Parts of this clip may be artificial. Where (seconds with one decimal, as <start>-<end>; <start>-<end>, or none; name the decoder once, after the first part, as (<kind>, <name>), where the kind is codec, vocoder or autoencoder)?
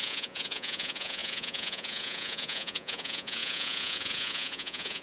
0.0-5.0 (vocoder, Vocos)